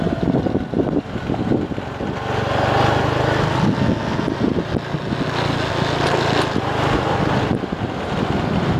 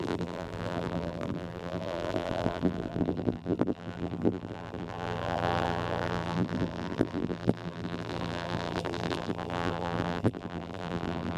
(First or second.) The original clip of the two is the first